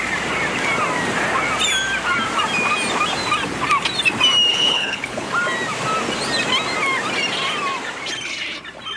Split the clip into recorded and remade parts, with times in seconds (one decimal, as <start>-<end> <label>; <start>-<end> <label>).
0.0-4.5 recorded; 4.5-5.3 remade; 5.3-9.0 recorded